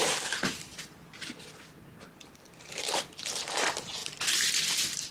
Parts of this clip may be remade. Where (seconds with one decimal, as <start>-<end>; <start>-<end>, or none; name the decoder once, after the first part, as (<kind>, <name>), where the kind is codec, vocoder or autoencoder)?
0.0-0.7 (vocoder, BigVGAN v2); 3.4-5.1